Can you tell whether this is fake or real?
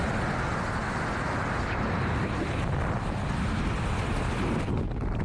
real